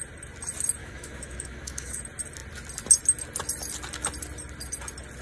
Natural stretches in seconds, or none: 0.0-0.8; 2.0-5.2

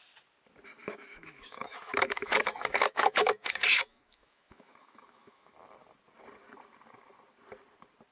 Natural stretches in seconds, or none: 0.0-0.8; 5.5-8.1

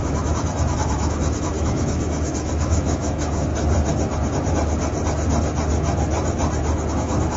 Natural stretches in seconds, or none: 3.5-6.9

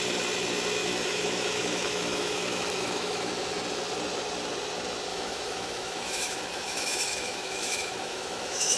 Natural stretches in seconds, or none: 0.0-0.8; 3.3-5.1

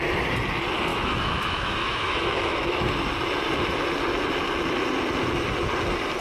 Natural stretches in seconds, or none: 0.0-0.9; 2.9-6.2